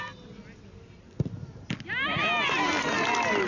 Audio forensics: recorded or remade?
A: recorded